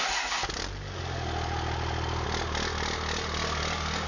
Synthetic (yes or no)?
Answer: no